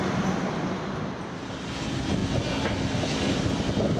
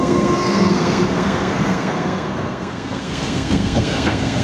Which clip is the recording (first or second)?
first